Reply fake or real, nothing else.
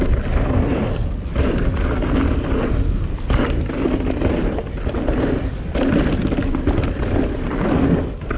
real